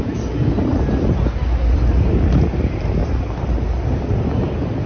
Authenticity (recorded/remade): recorded